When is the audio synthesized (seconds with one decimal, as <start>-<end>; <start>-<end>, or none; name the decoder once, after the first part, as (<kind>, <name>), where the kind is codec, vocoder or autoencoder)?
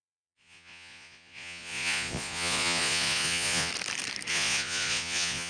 0.0-3.7 (vocoder, Vocos); 4.3-5.5